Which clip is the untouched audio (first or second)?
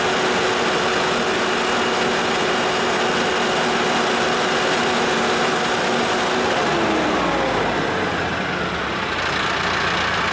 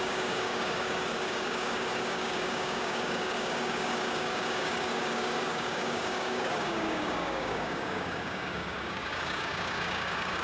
first